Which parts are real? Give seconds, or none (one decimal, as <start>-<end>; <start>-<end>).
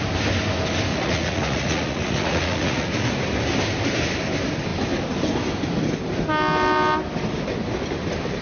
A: 0.0-0.9; 2.9-8.4